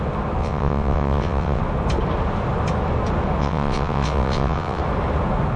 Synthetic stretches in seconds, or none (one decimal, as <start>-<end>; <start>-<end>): 0.4-1.6; 3.4-4.8